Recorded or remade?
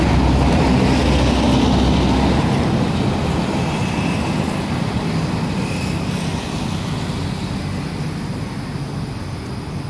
recorded